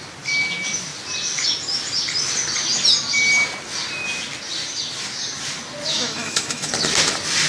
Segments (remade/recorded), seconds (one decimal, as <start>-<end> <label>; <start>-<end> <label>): 0.0-5.9 recorded; 5.9-6.7 remade; 6.7-7.5 recorded